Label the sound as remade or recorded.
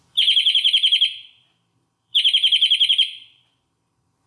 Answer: remade